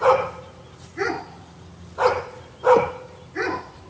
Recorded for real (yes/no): yes